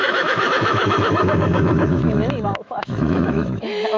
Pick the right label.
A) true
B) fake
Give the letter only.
B